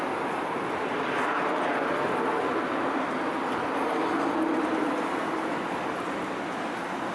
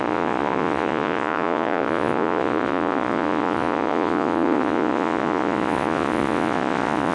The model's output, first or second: second